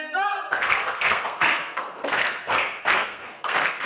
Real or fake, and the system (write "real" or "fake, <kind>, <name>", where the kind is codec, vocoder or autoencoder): fake, codec, SNAC